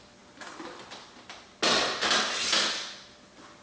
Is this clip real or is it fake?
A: real